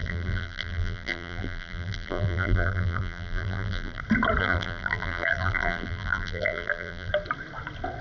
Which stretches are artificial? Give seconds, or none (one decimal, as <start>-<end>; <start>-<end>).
0.0-4.0; 4.4-7.1